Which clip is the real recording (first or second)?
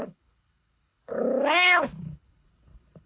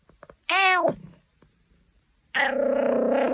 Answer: second